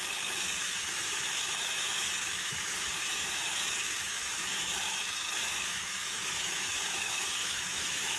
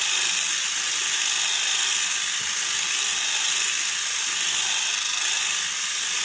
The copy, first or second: first